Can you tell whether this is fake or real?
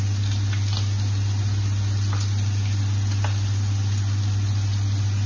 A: real